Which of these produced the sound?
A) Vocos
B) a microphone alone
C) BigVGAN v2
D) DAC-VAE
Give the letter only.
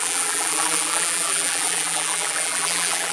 C